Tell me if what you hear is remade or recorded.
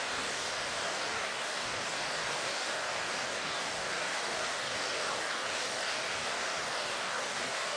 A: remade